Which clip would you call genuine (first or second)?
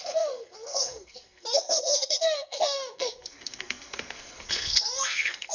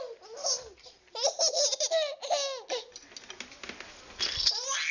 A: second